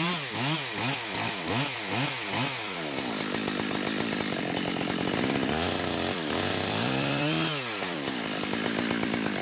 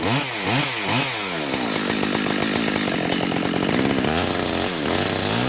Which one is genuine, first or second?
second